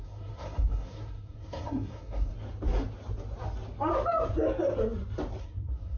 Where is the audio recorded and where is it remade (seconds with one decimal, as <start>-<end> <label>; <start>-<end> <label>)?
0.0-2.3 remade; 2.3-5.4 recorded; 5.4-6.0 remade